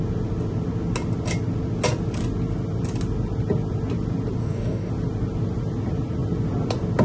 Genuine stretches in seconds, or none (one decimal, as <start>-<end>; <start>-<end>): 0.0-4.4; 4.9-7.0